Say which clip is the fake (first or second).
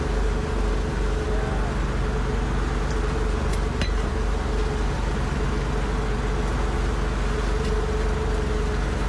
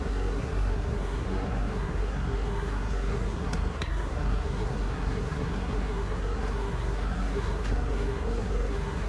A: second